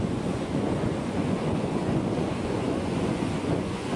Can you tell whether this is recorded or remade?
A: remade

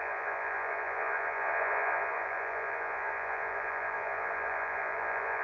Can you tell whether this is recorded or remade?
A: remade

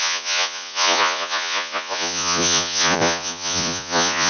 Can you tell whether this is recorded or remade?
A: remade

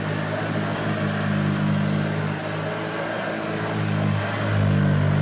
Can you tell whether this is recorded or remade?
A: recorded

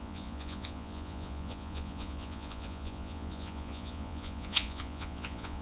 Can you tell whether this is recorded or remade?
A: remade